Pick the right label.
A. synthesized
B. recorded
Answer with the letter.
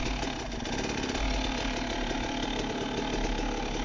B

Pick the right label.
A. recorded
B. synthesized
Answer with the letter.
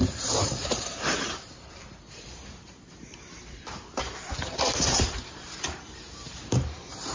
B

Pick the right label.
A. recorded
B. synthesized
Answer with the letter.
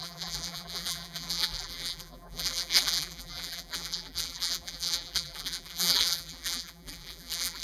B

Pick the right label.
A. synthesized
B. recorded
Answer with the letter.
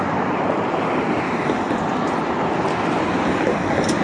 B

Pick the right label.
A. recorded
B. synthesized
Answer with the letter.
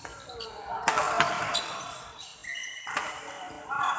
B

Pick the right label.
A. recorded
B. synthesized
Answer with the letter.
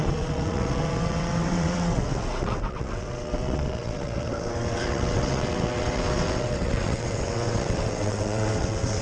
B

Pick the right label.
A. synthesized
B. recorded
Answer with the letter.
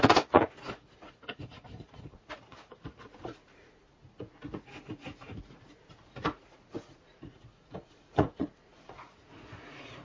A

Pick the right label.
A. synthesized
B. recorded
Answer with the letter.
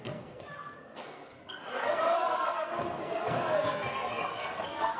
A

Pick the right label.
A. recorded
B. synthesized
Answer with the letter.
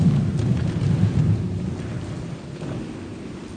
A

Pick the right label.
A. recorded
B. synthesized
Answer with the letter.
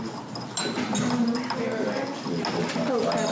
A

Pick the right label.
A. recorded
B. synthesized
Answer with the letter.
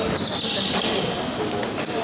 A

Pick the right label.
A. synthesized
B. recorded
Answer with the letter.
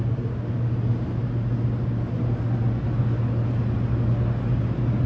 B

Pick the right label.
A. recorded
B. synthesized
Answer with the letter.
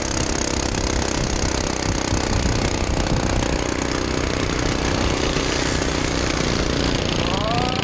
A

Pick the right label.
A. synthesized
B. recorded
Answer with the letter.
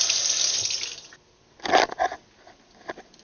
B